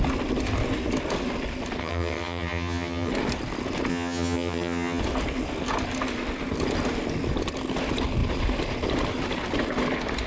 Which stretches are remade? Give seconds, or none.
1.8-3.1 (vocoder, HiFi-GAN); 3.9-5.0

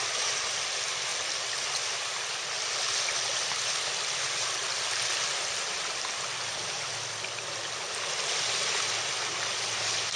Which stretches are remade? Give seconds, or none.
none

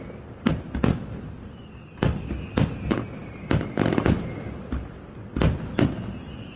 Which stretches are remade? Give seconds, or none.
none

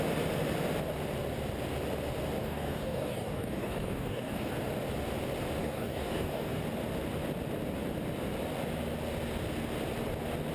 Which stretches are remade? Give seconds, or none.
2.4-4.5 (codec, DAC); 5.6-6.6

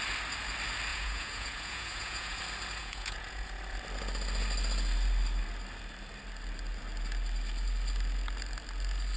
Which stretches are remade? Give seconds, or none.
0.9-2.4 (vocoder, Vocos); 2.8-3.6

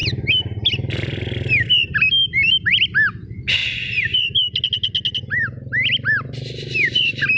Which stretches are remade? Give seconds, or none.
none

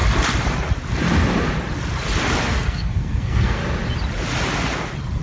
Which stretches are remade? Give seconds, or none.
2.5-3.6 (codec, SNAC)

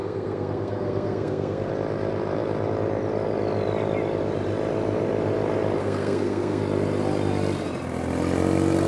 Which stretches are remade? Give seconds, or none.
0.0-1.7 (codec, SNAC); 5.8-6.6